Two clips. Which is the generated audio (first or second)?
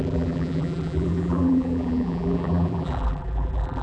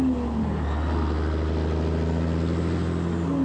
first